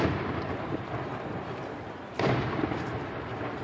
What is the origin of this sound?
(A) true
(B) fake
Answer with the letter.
B